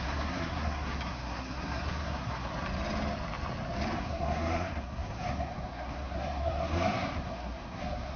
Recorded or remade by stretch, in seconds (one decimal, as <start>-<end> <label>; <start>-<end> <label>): 0.0-2.5 remade; 2.5-4.0 recorded; 4.0-8.2 remade